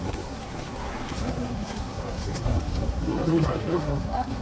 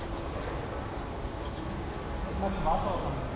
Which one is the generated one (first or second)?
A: first